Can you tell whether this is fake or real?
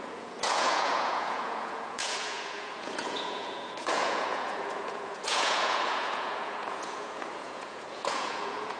fake